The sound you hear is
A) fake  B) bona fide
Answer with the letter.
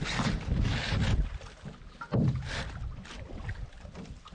A